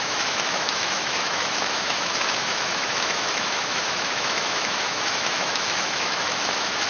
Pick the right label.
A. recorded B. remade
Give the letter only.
B